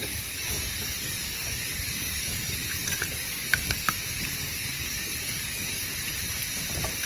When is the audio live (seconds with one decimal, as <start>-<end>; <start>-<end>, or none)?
5.9-7.1